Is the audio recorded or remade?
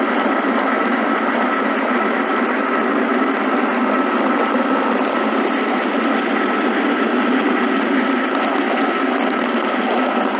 recorded